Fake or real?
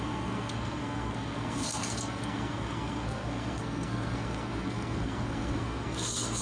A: fake